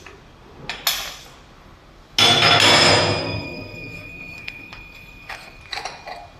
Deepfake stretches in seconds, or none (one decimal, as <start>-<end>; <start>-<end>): 3.2-5.6